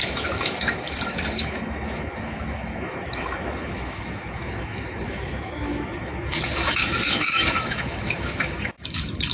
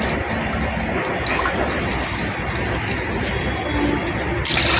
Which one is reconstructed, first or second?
first